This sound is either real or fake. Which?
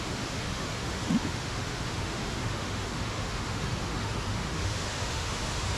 fake